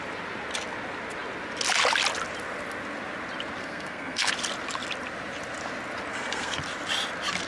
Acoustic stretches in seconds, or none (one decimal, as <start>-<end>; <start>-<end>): 0.0-3.6; 4.3-6.1; 6.6-7.5